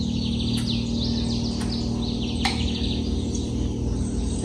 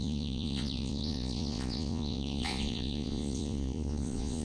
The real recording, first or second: first